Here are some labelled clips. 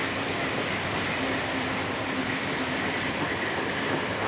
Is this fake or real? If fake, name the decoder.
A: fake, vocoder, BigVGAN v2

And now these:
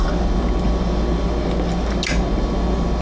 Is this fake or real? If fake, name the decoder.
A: real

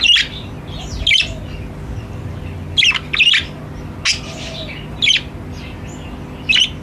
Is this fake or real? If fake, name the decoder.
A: real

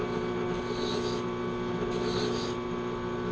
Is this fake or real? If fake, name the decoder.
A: real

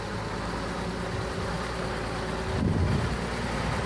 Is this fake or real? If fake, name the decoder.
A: real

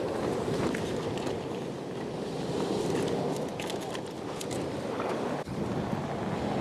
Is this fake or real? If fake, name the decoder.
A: real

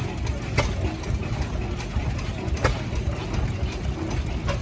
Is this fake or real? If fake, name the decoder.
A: real